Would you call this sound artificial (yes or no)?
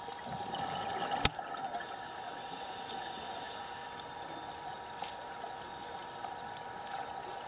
no